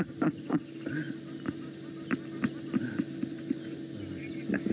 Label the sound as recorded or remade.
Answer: recorded